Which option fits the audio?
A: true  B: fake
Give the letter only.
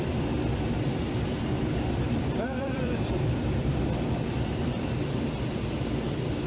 B